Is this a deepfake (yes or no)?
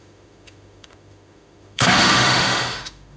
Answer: yes